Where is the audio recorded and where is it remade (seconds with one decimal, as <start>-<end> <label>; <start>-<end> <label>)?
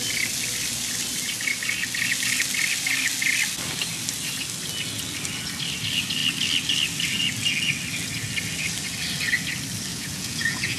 0.0-9.9 recorded; 9.9-10.8 remade